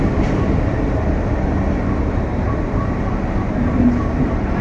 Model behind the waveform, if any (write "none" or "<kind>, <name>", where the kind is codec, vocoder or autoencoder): none